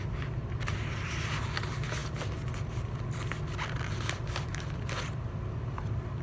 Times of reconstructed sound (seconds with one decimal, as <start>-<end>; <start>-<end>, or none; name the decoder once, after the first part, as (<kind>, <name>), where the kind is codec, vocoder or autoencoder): none